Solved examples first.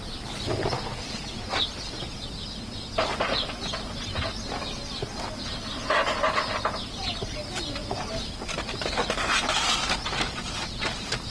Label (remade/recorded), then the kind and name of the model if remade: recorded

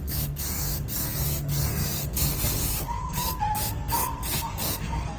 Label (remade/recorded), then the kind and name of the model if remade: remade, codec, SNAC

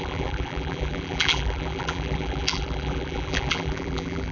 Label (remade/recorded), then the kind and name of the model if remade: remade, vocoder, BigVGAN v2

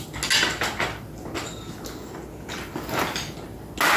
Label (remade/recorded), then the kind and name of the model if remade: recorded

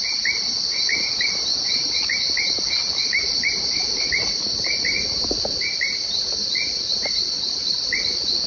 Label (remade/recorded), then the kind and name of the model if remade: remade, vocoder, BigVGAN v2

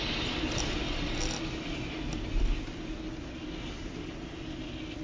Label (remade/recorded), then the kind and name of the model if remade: recorded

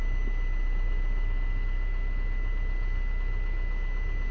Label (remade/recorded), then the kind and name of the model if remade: recorded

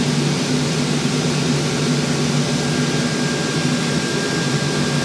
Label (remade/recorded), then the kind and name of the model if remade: recorded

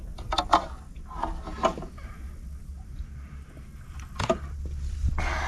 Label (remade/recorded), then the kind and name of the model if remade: recorded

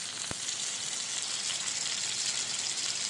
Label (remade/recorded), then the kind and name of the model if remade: recorded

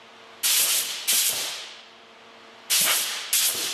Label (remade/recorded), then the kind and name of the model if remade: recorded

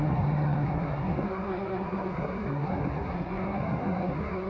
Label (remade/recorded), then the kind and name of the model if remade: remade, codec, SNAC